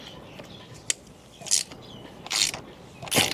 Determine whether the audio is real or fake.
real